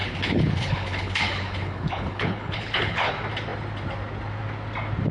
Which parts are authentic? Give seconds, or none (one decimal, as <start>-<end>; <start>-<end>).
3.1-5.1